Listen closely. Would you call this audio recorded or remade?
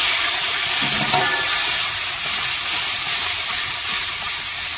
recorded